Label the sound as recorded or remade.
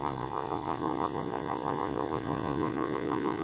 remade